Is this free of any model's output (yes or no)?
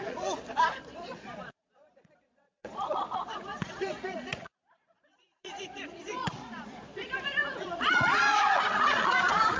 no